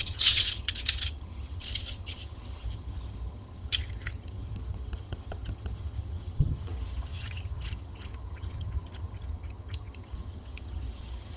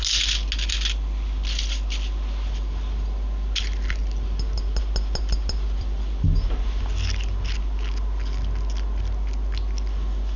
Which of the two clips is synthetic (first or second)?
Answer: first